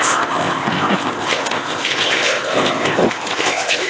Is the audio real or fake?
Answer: fake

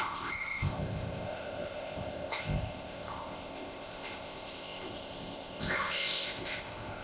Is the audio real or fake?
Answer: fake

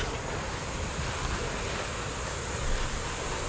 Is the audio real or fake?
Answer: real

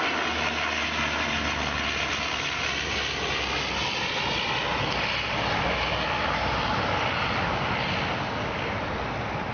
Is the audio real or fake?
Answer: real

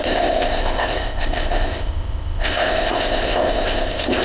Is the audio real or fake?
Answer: fake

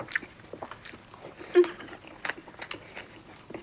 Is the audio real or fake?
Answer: real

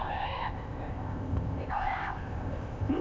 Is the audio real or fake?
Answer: fake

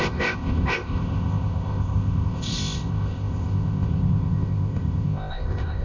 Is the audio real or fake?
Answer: fake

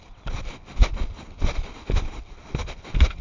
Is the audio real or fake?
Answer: real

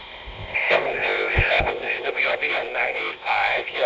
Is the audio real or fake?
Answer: fake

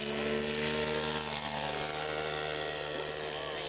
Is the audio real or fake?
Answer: real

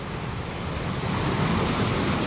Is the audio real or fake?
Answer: real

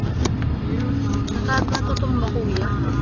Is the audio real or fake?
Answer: real